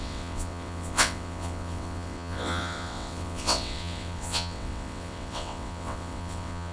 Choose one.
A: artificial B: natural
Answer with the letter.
A